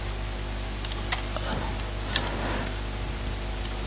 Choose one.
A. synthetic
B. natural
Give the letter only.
B